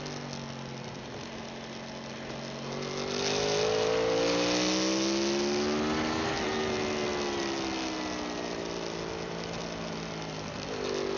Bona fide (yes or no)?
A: yes